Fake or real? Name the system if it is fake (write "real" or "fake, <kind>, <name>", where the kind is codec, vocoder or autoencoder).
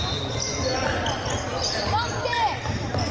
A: real